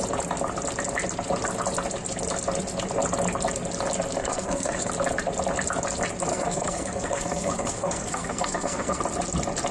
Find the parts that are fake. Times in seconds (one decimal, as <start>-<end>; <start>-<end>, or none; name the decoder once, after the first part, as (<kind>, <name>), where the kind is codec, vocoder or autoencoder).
4.2-4.9 (codec, SNAC); 6.3-9.0